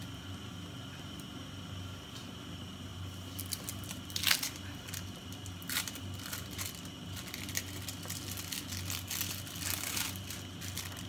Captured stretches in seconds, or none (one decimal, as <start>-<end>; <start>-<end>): 0.0-11.1